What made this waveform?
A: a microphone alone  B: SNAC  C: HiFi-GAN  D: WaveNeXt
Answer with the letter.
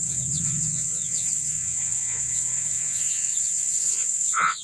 D